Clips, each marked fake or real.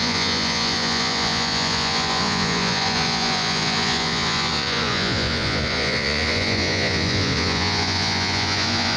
fake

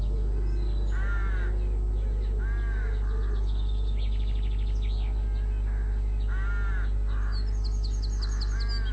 real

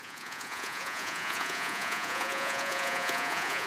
fake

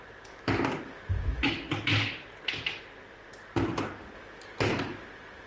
real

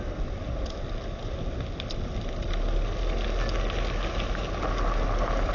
real